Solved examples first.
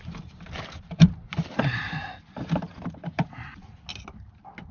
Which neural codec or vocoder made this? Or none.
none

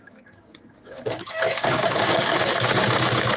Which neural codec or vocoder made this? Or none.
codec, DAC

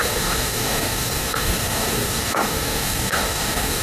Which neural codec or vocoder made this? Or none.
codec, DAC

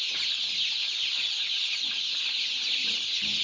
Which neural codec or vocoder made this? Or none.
none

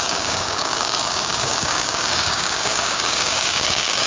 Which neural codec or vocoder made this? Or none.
codec, DAC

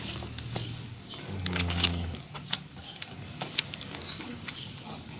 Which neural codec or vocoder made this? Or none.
codec, DAC